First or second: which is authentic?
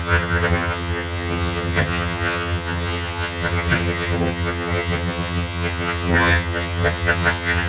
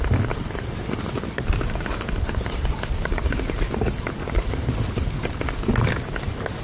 second